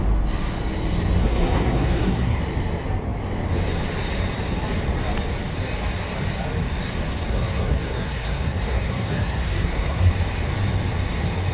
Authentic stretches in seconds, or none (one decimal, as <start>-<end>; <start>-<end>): 0.0-1.2; 2.4-7.3; 10.1-11.5